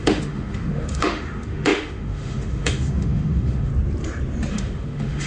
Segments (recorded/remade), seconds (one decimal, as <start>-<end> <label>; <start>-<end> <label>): 0.0-3.7 remade; 3.7-4.5 recorded; 4.5-5.3 remade